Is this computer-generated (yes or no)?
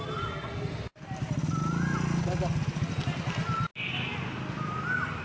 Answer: no